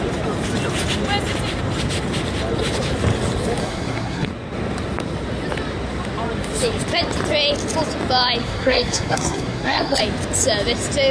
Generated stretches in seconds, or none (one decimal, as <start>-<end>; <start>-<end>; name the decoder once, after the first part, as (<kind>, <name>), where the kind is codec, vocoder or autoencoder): 3.6-4.3 (codec, SNAC); 8.4-10.0